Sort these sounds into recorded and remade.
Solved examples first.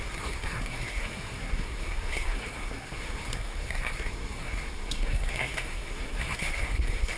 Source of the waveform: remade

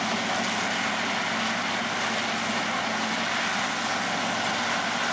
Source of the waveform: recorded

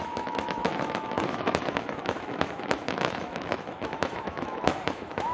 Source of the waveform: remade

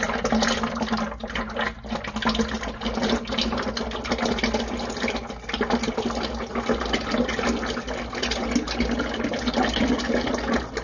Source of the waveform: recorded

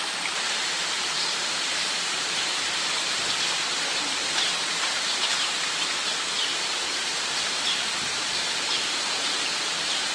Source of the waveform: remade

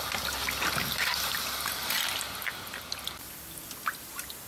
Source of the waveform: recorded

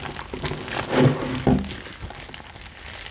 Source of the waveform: recorded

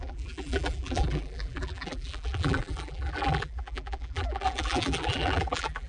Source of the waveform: remade